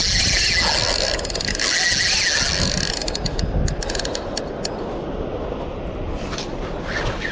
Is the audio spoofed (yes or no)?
no